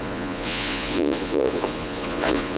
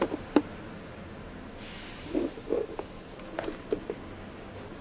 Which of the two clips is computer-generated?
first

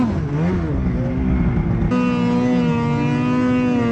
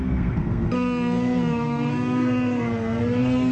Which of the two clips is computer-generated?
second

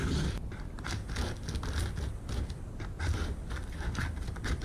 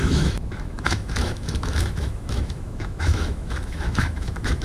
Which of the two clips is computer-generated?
second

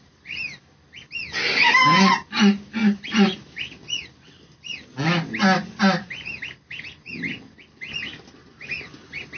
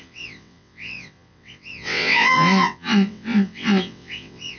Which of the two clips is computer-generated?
second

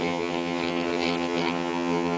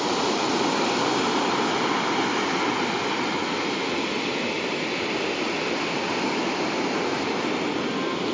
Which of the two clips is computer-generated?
first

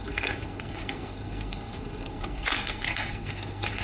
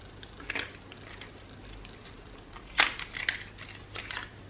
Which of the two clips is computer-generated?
first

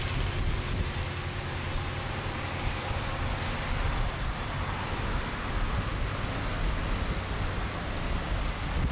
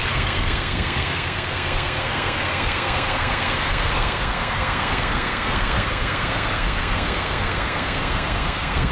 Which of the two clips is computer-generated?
second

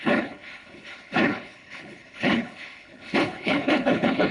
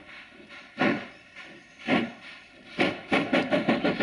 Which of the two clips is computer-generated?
first